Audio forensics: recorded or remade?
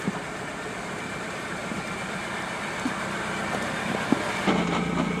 recorded